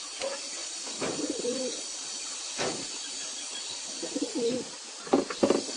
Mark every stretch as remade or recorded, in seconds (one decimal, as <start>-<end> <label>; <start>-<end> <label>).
0.0-5.8 recorded